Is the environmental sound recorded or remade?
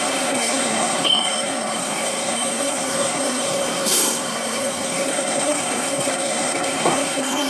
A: remade